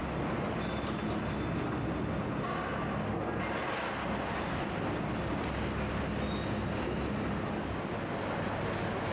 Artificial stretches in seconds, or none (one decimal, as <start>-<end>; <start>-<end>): none